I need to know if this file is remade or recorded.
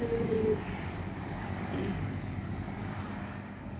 remade